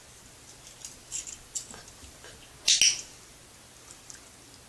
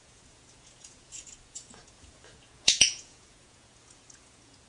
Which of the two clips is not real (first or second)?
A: second